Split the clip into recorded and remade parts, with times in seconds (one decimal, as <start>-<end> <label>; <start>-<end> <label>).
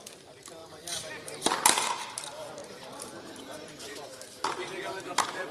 0.0-0.6 remade; 0.6-1.1 recorded; 1.1-2.6 remade; 2.6-3.3 recorded; 3.3-5.5 remade